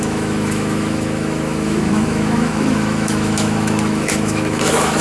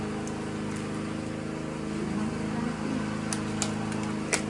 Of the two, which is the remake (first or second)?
first